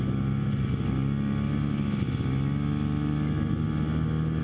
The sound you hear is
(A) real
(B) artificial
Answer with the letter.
A